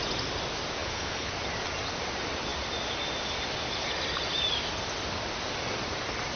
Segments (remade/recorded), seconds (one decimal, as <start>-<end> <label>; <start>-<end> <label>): 0.0-0.8 recorded; 0.8-1.3 remade; 1.3-6.4 recorded